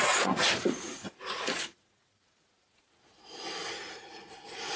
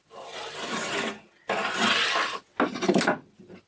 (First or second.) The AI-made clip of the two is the first